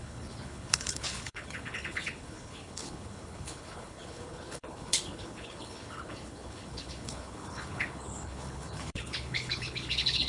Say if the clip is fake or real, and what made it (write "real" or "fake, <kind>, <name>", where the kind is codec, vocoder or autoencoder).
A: fake, codec, HILCodec